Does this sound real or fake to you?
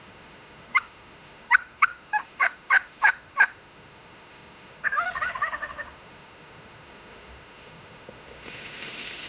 fake